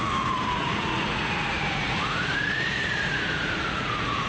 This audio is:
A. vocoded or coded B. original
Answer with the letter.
A